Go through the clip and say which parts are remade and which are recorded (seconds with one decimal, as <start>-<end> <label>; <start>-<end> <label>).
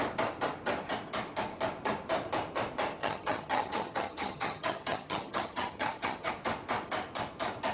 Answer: 0.0-3.0 recorded; 3.0-6.3 remade; 6.3-7.7 recorded